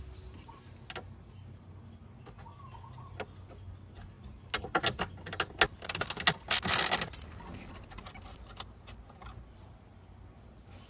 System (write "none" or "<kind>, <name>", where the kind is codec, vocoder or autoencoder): none